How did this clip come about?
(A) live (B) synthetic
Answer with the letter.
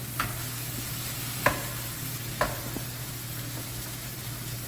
A